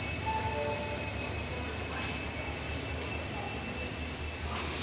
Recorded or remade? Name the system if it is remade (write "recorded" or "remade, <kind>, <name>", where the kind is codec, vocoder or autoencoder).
recorded